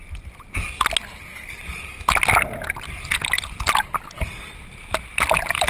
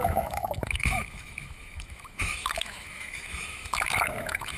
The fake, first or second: second